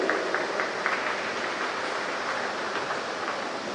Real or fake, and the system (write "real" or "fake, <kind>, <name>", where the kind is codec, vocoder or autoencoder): real